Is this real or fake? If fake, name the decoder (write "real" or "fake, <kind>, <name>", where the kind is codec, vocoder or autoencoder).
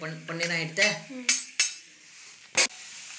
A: real